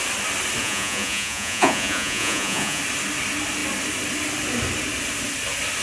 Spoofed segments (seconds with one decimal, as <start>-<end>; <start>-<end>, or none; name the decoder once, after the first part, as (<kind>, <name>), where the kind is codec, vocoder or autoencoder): 0.6-2.8 (vocoder, Vocos)

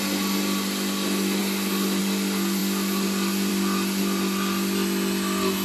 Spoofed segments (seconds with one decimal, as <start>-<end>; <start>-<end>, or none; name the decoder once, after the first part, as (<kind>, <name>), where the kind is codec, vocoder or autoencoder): none

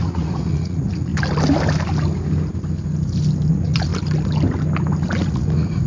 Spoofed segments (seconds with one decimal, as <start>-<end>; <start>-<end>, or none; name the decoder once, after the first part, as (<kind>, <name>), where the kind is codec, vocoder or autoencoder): 0.0-1.1 (vocoder, Vocos); 3.5-3.9; 5.2-5.9